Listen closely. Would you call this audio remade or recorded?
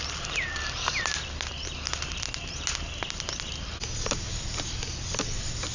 recorded